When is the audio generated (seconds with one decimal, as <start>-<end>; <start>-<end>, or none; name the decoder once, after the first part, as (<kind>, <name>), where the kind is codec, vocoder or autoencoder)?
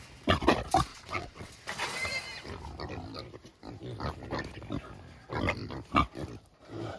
0.9-1.5 (vocoder, WaveNeXt)